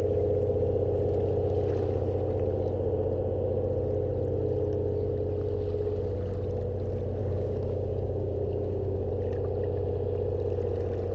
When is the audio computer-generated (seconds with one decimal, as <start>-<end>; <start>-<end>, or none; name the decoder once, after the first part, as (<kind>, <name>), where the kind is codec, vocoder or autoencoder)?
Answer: 7.2-9.1 (codec, DAC)